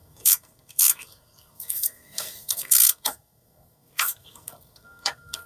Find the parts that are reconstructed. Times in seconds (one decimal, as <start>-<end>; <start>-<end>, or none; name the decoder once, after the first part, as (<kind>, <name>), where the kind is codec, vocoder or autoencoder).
0.0-5.5 (codec, SNAC)